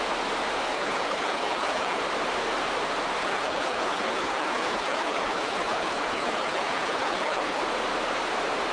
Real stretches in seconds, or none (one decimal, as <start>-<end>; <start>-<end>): 0.0-0.7; 2.0-3.2; 7.6-8.7